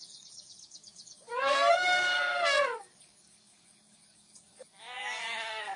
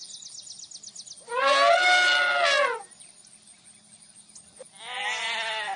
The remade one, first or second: first